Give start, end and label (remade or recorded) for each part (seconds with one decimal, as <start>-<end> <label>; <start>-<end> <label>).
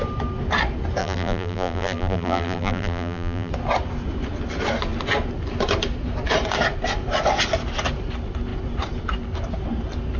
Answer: 0.0-1.0 recorded; 1.0-3.5 remade; 3.5-10.2 recorded